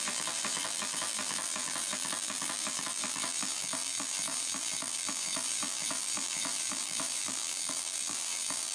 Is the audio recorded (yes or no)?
no